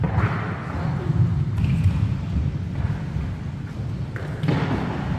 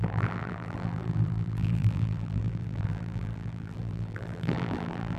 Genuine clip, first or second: first